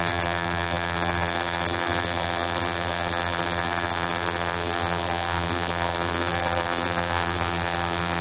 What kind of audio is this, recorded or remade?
remade